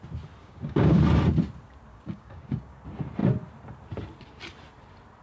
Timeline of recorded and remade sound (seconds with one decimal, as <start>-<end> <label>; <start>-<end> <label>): 0.0-0.4 recorded; 0.4-1.0 remade; 1.0-1.9 recorded; 1.9-2.8 remade; 2.8-5.2 recorded